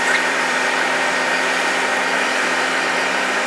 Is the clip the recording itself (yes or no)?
no